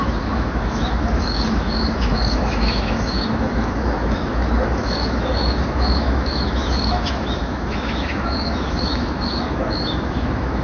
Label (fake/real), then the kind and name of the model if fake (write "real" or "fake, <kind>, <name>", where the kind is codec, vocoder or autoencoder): fake, autoencoder, DAC-VAE